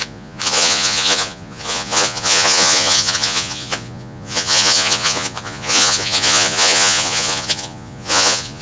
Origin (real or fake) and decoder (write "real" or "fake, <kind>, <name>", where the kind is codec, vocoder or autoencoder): fake, vocoder, Vocos